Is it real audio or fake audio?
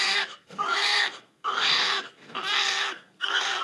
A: fake